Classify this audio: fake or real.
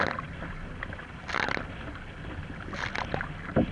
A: real